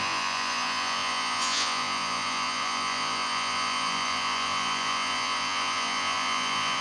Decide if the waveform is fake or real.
fake